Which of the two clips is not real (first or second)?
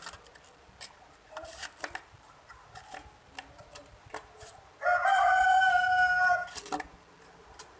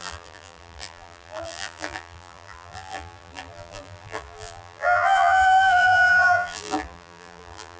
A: second